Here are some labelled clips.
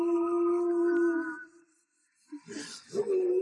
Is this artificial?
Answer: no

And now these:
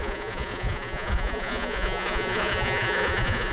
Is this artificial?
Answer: yes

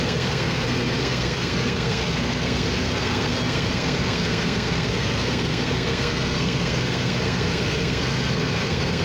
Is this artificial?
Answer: yes